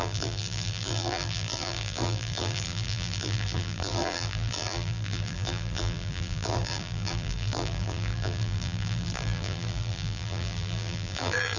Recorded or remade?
remade